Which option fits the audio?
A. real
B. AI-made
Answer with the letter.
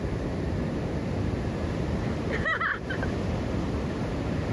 A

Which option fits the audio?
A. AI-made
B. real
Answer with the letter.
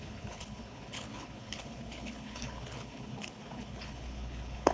A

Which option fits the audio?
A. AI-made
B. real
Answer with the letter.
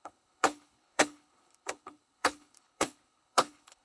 A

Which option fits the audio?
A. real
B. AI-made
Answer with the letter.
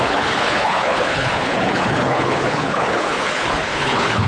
B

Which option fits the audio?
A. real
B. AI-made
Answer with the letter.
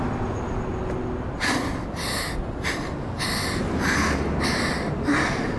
A